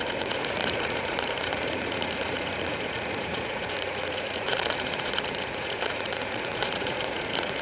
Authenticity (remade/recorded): remade